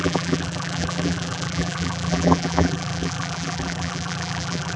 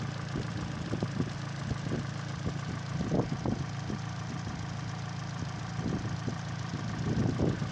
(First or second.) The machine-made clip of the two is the first